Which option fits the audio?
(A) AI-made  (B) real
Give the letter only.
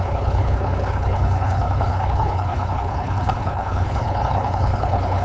A